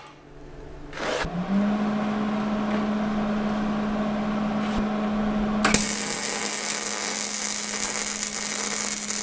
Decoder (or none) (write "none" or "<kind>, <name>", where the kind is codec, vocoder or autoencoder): none